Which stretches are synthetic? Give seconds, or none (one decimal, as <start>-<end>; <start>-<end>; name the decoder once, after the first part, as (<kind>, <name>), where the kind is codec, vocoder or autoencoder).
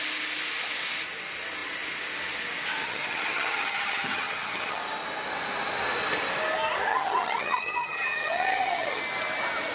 2.8-4.8 (vocoder, HiFi-GAN); 6.9-9.0